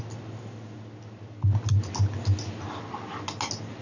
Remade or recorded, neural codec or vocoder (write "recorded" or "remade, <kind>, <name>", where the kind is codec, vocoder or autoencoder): recorded